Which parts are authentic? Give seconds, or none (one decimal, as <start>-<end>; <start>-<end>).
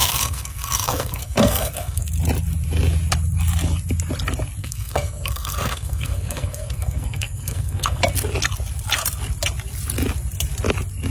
2.1-4.6; 8.0-11.1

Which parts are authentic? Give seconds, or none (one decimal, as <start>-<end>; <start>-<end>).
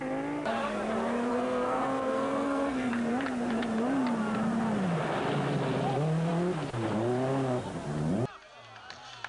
0.0-1.3; 2.9-9.3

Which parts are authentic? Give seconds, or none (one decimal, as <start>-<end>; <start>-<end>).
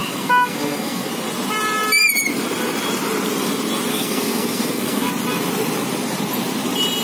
1.1-3.9; 5.1-7.0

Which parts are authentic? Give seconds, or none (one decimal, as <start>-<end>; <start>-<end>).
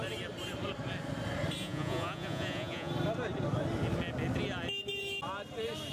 0.0-1.6; 2.9-5.9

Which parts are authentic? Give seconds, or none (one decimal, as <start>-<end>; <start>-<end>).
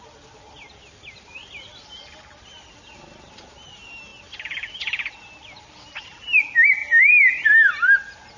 0.0-6.8; 7.5-8.4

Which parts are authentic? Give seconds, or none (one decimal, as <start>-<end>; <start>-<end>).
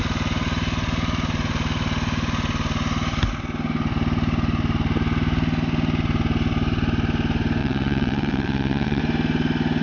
0.0-7.6; 9.0-9.8